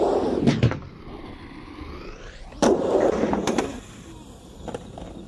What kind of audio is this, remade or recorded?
remade